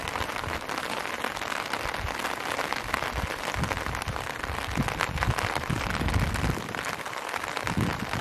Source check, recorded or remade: recorded